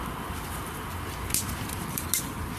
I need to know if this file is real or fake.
real